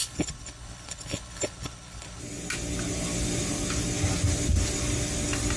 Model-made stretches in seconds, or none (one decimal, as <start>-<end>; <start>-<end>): 0.0-2.2